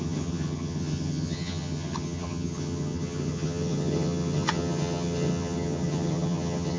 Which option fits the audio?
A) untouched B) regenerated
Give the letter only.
B